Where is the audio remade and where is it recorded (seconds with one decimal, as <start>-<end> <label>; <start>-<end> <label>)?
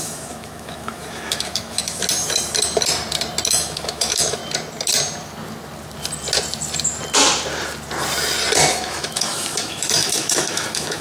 0.0-2.0 remade; 2.0-3.5 recorded; 3.5-4.4 remade; 4.4-8.7 recorded; 8.7-11.0 remade